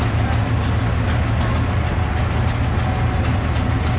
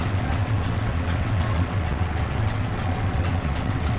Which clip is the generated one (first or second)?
second